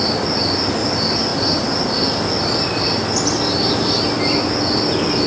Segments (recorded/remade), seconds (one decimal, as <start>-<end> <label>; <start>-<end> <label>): 0.0-5.3 recorded